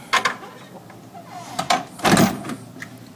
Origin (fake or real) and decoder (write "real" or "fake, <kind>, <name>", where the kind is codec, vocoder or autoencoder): real